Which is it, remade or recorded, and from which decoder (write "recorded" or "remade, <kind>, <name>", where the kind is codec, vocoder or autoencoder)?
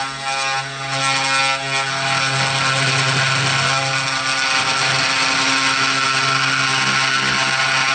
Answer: recorded